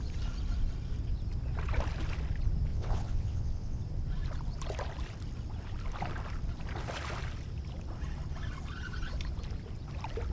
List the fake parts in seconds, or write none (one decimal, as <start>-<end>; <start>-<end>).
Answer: 2.7-3.8